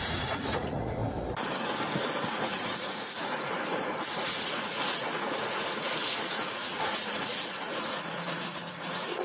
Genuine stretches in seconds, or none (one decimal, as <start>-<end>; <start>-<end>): 1.0-2.3